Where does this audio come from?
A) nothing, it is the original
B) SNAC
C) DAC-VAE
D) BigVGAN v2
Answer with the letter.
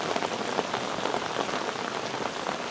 A